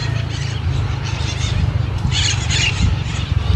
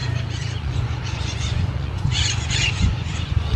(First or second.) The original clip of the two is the first